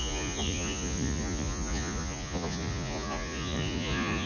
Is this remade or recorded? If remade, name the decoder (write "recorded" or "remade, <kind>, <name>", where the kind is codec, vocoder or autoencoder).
remade, vocoder, Vocos